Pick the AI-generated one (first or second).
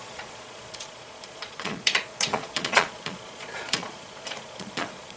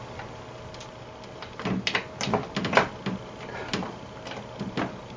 first